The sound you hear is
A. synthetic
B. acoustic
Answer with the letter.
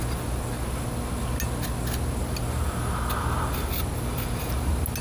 B